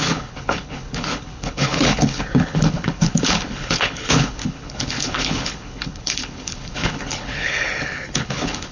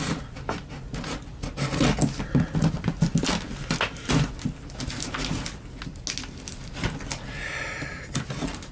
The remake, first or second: first